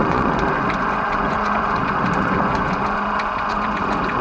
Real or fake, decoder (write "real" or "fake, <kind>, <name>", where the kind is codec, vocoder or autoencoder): fake, vocoder, Vocos